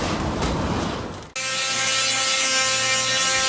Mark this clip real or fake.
real